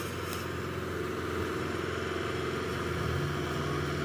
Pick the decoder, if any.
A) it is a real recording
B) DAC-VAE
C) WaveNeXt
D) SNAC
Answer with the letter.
A